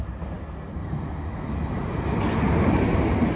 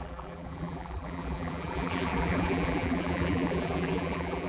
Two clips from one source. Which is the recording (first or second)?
first